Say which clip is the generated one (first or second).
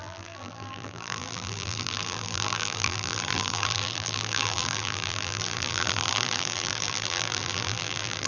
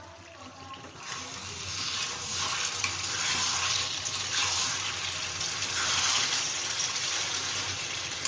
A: first